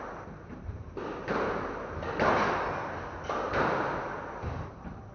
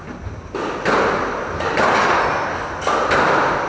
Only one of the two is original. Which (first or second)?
second